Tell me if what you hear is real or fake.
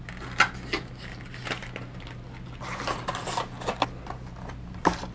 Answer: real